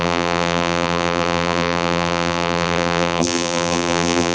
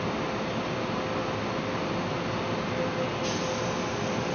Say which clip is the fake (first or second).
first